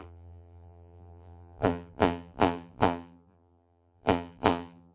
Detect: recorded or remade remade